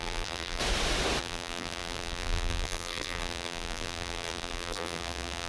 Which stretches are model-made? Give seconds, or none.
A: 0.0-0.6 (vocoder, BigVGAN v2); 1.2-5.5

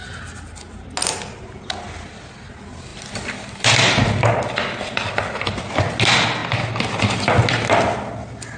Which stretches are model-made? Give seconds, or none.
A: none

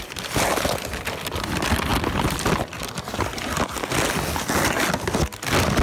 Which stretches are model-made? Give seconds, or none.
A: none

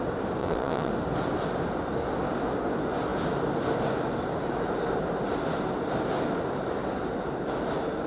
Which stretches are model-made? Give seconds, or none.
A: 0.4-0.9 (vocoder, WaveNeXt)

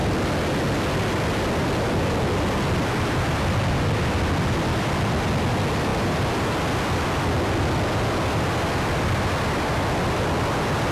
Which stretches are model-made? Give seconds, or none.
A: none

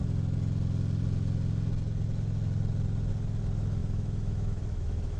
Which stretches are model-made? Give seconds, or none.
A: 3.8-5.2 (autoencoder, DAC-VAE)

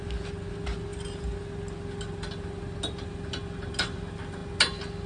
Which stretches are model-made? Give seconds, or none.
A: none

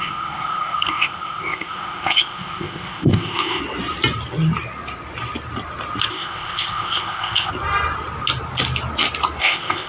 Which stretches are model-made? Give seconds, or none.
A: 0.0-3.6 (codec, ZipCodec); 6.1-7.5; 9.4-9.9